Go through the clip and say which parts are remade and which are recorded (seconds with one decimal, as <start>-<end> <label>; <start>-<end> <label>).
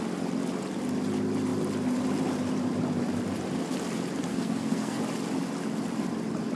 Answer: 0.0-4.3 recorded; 4.3-5.0 remade; 5.0-6.6 recorded